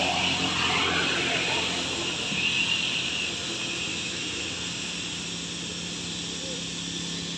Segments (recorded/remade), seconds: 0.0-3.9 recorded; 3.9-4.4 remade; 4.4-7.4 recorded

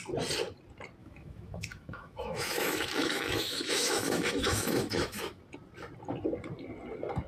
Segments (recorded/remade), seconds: 0.0-1.0 recorded; 1.0-5.4 remade; 5.4-7.3 recorded

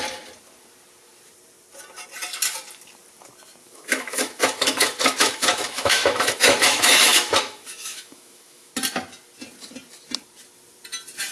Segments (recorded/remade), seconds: 0.0-3.6 recorded; 3.6-8.7 remade; 8.7-11.3 recorded

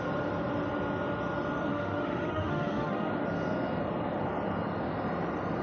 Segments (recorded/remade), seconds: 0.0-1.7 recorded; 1.7-3.1 remade; 3.1-5.6 recorded

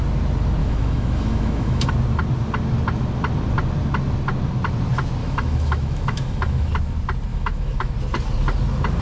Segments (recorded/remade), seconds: 0.0-0.6 recorded; 0.6-1.9 remade; 1.9-5.2 recorded; 5.2-6.7 remade; 6.7-7.3 recorded; 7.3-7.9 remade; 7.9-9.0 recorded